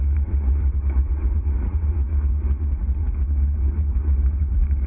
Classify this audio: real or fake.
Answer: fake